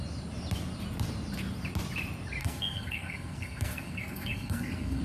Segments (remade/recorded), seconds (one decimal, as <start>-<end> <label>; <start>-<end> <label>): 0.0-2.4 recorded; 2.4-5.0 remade